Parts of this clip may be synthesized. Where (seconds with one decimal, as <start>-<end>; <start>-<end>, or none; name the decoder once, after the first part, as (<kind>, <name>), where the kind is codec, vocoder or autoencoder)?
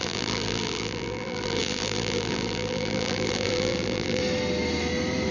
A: 0.0-4.2 (vocoder, BigVGAN v2)